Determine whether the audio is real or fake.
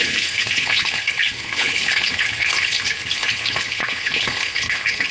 fake